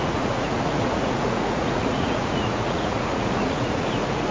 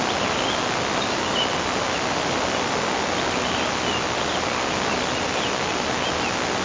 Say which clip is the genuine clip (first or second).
second